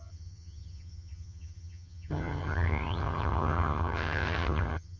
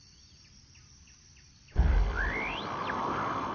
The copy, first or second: first